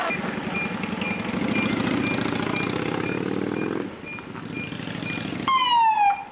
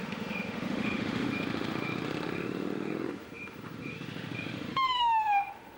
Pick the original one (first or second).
first